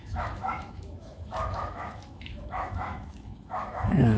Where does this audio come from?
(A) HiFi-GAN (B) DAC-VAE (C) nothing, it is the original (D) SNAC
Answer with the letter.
B